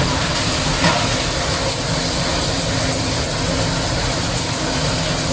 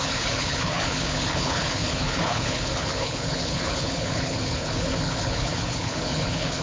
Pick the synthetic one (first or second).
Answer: second